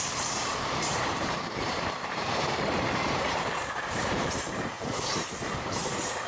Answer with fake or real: fake